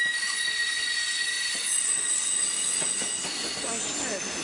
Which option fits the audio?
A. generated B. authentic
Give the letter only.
B